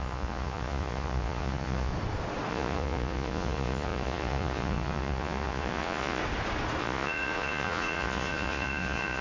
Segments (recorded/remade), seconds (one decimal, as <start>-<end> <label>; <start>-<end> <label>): 0.0-1.9 remade; 1.9-2.5 recorded; 2.5-6.2 remade; 6.2-6.8 recorded; 6.8-9.2 remade